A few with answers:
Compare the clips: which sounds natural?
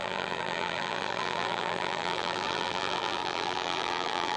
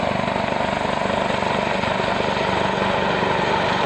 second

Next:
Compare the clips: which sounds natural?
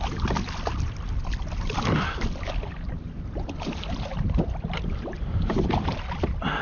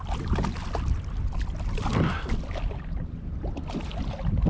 second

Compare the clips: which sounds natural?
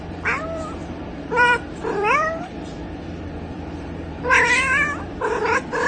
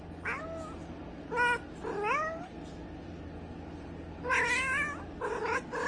second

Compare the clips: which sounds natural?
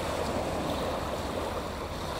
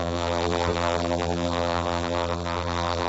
first